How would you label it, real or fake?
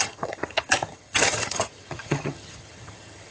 fake